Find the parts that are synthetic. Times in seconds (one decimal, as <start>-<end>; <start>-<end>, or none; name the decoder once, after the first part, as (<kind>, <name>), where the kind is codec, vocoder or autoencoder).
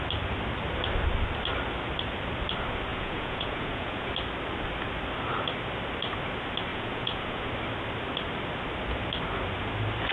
2.9-4.1 (vocoder, Vocos); 6.7-7.5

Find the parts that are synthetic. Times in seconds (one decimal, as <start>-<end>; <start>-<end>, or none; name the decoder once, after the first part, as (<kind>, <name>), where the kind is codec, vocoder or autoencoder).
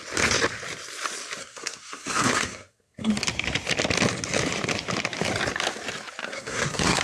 1.4-3.1 (codec, SNAC); 6.2-7.0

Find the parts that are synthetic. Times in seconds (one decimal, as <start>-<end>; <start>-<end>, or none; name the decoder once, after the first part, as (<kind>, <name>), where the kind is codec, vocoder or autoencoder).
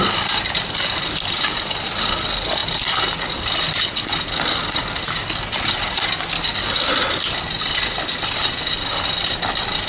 none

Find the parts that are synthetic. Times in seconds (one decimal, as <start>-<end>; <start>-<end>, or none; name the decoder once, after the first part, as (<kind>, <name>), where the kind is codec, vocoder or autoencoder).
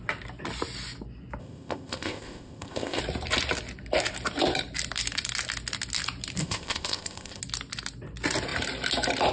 1.4-3.0 (codec, ZipCodec); 6.4-7.4